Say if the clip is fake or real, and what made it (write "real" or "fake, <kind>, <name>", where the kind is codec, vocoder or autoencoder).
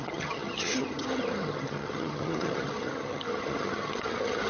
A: fake, vocoder, HiFi-GAN